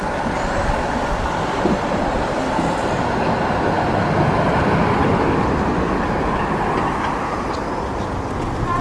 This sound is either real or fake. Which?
real